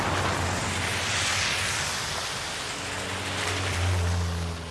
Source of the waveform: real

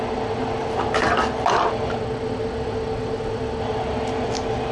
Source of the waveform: real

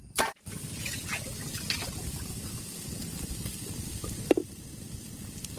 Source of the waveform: real